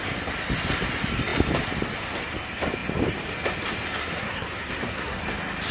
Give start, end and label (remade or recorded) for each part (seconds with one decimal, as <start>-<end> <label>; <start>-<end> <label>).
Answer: 0.0-4.0 recorded; 4.0-5.2 remade; 5.2-5.7 recorded